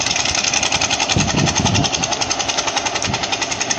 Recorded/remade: recorded